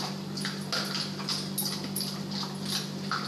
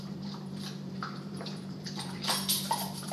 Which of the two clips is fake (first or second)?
second